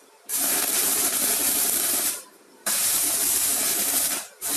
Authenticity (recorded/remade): remade